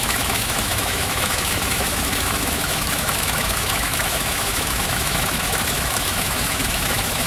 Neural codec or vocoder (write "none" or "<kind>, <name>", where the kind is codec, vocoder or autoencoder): autoencoder, DAC-VAE